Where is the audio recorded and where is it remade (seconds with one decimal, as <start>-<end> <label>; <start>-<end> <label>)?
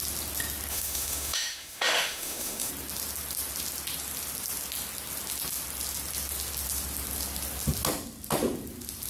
0.0-0.7 recorded; 0.7-2.7 remade; 2.7-9.1 recorded